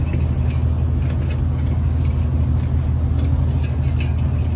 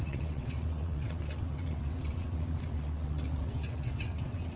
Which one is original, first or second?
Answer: first